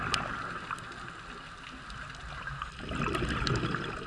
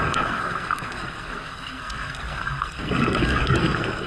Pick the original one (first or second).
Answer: first